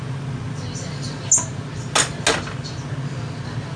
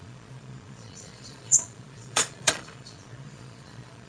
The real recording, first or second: first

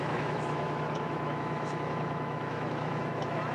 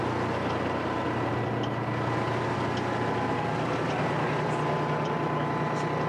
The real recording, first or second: second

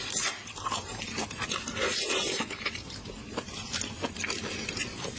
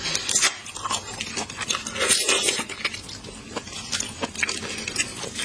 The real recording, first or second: second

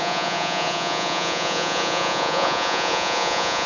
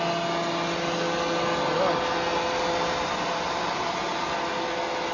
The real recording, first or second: second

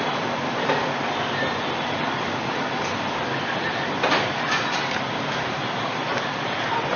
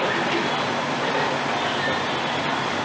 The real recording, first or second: second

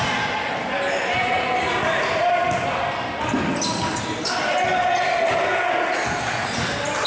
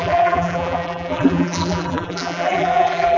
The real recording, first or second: first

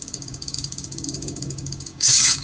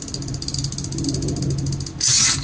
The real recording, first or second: second